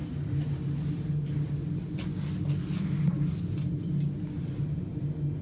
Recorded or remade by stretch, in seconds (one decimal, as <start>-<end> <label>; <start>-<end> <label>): 0.0-5.4 recorded